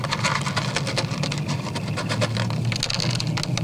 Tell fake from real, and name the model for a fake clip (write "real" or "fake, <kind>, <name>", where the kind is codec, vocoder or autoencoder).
real